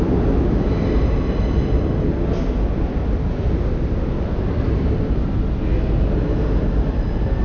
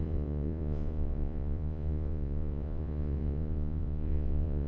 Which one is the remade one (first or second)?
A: second